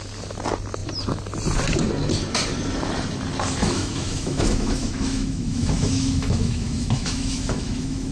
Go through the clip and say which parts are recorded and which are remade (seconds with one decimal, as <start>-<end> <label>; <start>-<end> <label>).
0.0-3.6 recorded; 3.6-8.1 remade